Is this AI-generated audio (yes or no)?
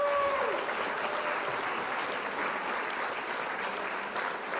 no